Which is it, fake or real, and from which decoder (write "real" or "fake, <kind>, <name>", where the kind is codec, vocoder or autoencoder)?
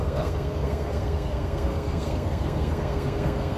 fake, codec, SNAC